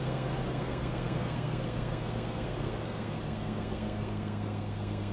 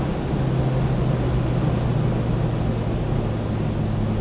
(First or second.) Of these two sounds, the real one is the second